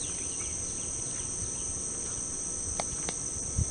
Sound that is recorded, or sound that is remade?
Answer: recorded